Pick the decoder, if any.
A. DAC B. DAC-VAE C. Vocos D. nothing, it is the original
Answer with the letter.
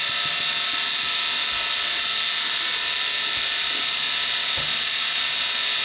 D